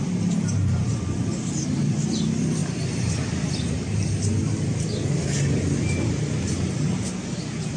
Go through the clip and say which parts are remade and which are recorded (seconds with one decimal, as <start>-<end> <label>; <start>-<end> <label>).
0.0-7.8 recorded